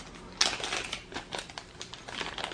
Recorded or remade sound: recorded